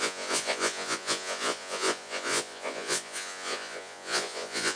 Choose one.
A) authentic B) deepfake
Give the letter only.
B